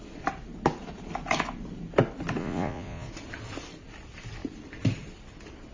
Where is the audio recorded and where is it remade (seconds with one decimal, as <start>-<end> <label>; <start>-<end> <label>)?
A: 0.0-2.4 recorded; 2.4-3.1 remade; 3.1-5.7 recorded